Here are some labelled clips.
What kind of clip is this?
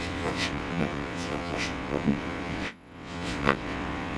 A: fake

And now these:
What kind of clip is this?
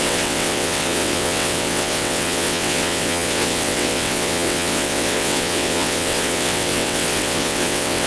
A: fake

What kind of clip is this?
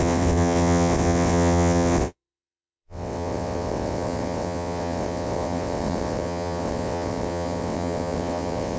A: fake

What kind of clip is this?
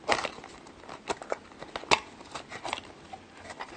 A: real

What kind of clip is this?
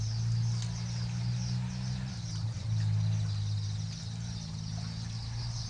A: real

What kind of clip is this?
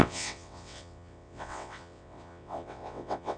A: fake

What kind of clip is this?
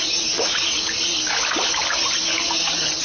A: real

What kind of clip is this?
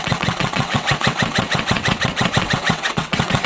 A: fake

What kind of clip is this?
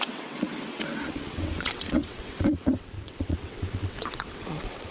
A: fake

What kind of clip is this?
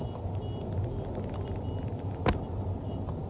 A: real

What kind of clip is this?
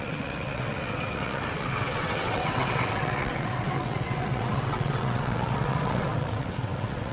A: fake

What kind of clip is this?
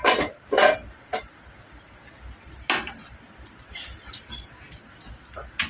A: real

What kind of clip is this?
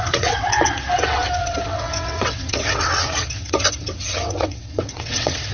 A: fake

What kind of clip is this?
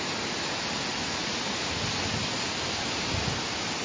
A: real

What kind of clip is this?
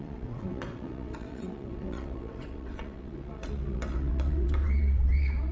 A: fake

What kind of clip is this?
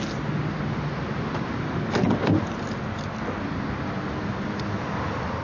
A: real